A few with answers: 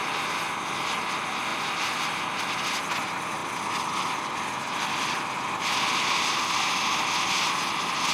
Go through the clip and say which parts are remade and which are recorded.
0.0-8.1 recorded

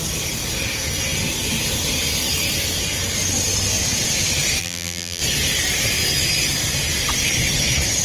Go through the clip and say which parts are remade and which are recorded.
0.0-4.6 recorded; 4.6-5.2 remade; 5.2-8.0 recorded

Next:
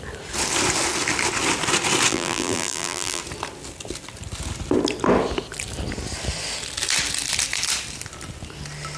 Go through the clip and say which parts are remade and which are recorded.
0.0-2.1 recorded; 2.1-3.2 remade; 3.2-9.0 recorded